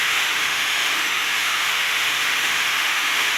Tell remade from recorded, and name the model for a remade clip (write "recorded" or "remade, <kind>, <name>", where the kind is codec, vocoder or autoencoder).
remade, autoencoder, DAC-VAE